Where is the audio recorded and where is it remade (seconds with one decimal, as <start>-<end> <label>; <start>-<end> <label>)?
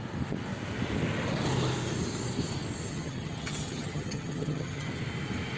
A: 0.0-2.9 recorded; 2.9-4.9 remade; 4.9-5.6 recorded